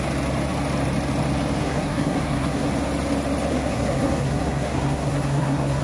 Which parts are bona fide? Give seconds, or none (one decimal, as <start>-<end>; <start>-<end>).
0.0-1.6; 2.7-3.5